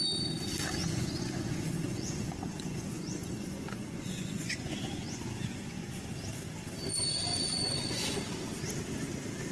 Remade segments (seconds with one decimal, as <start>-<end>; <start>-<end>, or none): 0.8-5.9; 7.3-8.1